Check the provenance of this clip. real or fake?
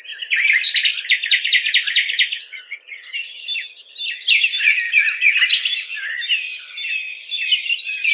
real